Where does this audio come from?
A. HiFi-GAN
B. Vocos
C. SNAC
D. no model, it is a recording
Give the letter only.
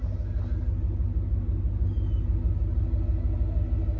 D